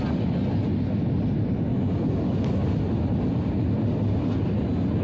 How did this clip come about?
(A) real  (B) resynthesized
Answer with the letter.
A